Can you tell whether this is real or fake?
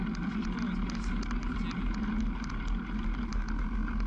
real